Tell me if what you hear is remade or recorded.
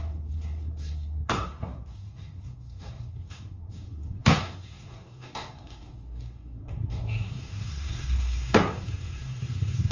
remade